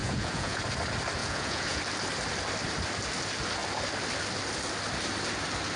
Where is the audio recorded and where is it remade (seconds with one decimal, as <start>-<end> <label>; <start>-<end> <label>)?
0.0-0.6 remade; 0.6-1.2 recorded; 1.2-1.8 remade; 1.8-5.8 recorded